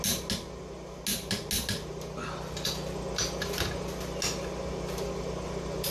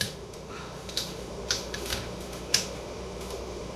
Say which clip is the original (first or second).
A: first